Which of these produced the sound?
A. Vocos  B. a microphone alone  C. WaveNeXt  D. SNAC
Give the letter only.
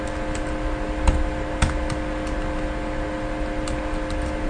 B